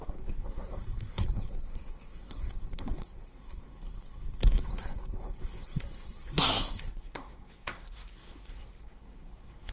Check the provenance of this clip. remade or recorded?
remade